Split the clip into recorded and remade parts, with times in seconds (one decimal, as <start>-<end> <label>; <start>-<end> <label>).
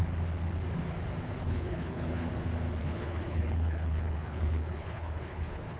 0.0-1.4 recorded; 1.4-2.3 remade; 2.3-2.8 recorded; 2.8-5.8 remade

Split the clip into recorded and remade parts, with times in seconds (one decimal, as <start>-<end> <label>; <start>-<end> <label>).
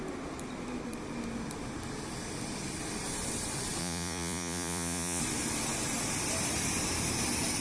0.0-3.8 recorded; 3.8-5.2 remade; 5.2-7.6 recorded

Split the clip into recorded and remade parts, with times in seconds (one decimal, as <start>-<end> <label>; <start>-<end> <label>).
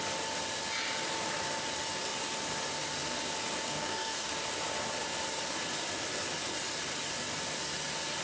0.0-3.6 recorded; 3.6-4.3 remade; 4.3-8.2 recorded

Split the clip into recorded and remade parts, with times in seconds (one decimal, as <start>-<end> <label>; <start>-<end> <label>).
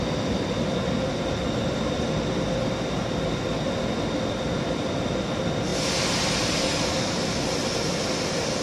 0.0-8.6 recorded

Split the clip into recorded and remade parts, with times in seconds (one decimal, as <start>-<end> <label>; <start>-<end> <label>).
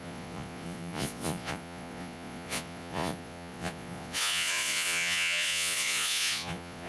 0.0-6.9 remade